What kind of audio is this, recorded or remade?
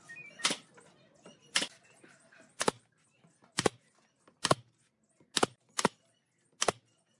recorded